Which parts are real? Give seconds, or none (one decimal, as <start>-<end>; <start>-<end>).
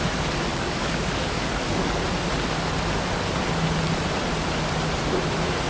0.0-0.5; 2.0-5.7